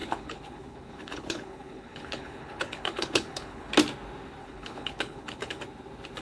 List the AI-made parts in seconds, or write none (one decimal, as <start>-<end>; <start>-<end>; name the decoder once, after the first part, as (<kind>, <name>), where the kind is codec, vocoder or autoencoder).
0.0-3.7 (codec, HILCodec); 4.4-5.6